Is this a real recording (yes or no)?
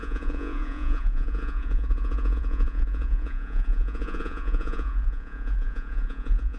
no